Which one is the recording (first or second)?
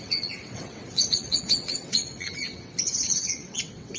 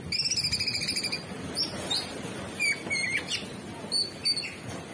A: second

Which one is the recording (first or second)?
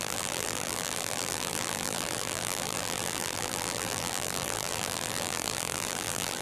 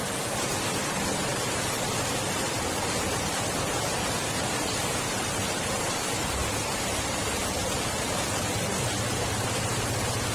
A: second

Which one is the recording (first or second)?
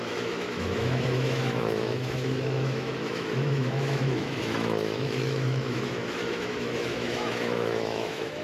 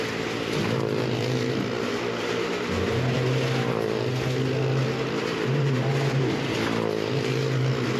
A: second